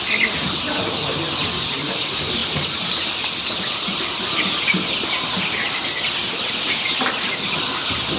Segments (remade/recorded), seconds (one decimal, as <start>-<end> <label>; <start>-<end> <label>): 0.0-8.2 recorded